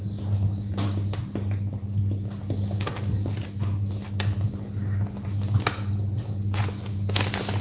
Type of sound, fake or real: real